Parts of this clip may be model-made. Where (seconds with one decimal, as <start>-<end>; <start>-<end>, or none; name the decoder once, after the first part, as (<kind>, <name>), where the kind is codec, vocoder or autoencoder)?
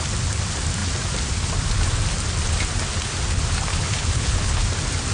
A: 3.7-4.6 (codec, HILCodec)